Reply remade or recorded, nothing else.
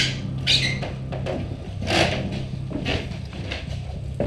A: recorded